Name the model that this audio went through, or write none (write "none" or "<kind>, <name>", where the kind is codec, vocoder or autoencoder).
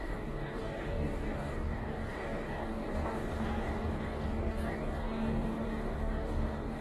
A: codec, DAC